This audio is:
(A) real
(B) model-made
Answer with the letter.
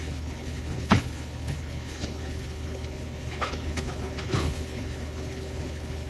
B